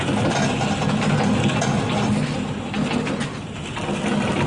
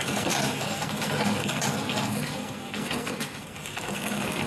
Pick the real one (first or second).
first